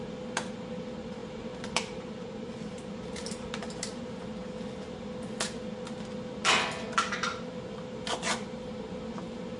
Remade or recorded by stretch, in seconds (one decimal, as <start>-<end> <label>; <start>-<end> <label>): 0.0-1.2 recorded; 1.2-4.0 remade; 4.0-9.6 recorded